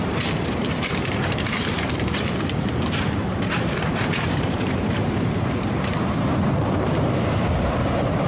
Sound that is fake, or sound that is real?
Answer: fake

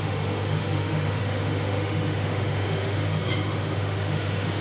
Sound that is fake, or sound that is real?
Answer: fake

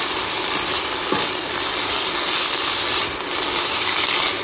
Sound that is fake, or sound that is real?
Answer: real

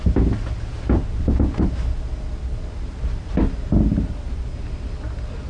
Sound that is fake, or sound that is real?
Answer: real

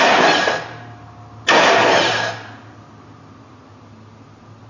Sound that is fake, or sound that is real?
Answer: real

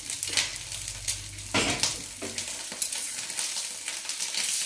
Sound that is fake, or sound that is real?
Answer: real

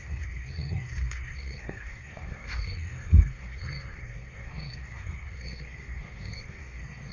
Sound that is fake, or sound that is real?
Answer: fake